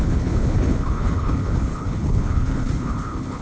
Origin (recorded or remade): remade